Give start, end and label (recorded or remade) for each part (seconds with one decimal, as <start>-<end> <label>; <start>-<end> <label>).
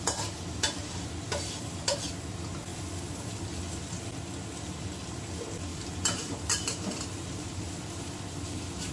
0.0-5.7 recorded; 5.7-8.9 remade